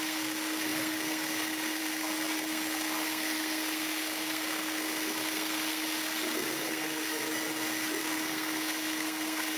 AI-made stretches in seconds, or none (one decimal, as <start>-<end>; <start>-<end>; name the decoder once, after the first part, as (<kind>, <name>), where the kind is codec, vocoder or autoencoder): 0.0-7.2 (codec, SNAC); 8.0-9.6